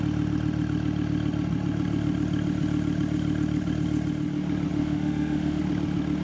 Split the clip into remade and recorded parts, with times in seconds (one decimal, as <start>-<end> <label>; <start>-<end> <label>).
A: 0.0-4.8 recorded; 4.8-5.6 remade; 5.6-6.2 recorded